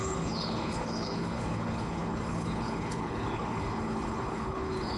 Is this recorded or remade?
remade